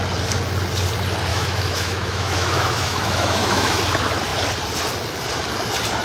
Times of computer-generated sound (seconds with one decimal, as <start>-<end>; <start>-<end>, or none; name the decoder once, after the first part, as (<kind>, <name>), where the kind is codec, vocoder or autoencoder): 1.3-3.8 (autoencoder, DAC-VAE)